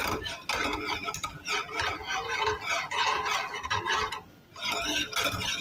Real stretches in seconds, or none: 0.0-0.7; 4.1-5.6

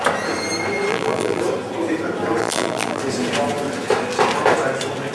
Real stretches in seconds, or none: 0.0-0.9; 1.4-2.4; 3.0-5.1

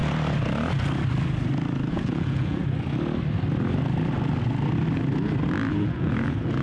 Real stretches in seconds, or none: 0.0-1.9; 2.6-5.7

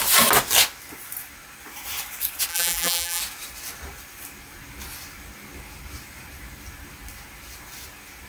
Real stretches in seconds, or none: 0.0-2.5; 3.2-8.3

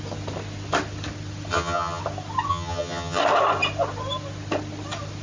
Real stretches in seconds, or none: 0.0-1.5; 2.0-2.5; 3.2-5.2